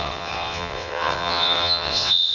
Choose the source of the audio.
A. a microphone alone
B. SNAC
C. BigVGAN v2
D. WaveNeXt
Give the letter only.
D